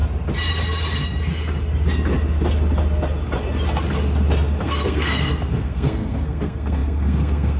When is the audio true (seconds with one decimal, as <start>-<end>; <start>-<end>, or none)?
0.0-4.6